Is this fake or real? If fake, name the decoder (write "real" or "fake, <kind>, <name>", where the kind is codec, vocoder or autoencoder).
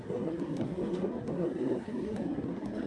fake, codec, SNAC